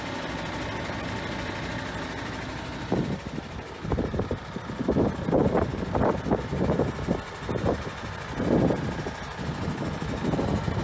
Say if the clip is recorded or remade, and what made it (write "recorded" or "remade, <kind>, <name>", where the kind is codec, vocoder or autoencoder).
recorded